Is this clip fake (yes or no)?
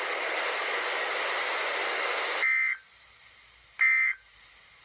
no